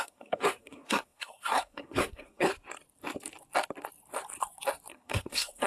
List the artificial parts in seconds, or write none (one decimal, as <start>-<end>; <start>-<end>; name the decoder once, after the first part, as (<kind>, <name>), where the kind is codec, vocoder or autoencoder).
0.0-2.5 (codec, SNAC); 4.9-5.7